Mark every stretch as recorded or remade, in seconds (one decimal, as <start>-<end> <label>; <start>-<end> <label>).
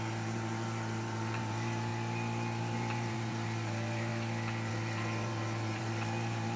0.0-1.9 remade; 1.9-2.6 recorded; 2.6-4.1 remade; 4.1-4.7 recorded; 4.7-6.6 remade